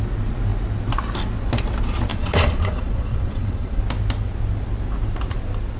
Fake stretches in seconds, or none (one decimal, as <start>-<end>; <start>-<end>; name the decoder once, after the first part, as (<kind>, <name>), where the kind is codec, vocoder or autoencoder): 2.1-3.8 (vocoder, Vocos)